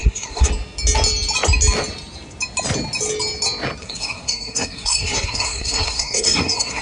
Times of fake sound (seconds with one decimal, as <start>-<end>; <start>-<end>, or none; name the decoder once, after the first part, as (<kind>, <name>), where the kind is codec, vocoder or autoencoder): 0.0-0.5 (codec, SNAC); 3.8-6.8